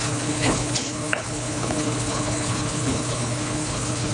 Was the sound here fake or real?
fake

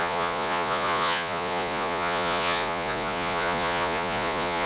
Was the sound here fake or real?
fake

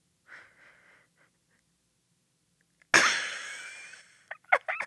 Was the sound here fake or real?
real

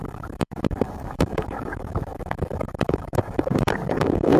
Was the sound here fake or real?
fake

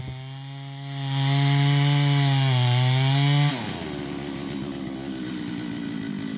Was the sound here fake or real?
real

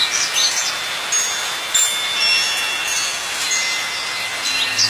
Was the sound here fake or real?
real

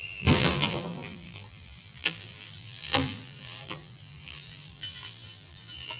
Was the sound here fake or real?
fake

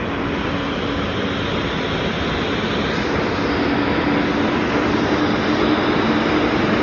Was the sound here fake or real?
real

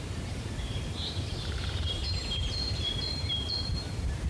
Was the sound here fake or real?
fake